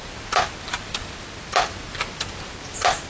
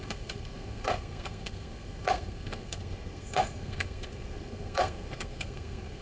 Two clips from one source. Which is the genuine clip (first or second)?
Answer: first